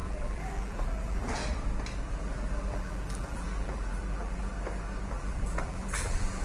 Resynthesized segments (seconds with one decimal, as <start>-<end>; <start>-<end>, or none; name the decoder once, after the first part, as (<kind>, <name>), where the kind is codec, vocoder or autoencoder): 0.0-1.4 (vocoder, BigVGAN v2); 2.1-4.5; 5.1-6.4